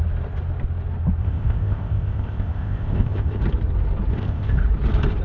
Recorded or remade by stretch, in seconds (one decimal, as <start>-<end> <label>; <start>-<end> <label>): 0.0-1.2 recorded; 1.2-3.4 remade; 3.4-4.1 recorded; 4.1-4.6 remade; 4.6-5.2 recorded